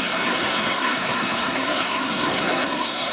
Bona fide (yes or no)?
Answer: no